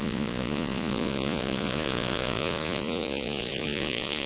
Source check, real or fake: fake